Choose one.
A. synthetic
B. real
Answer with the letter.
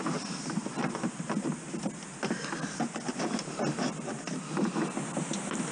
B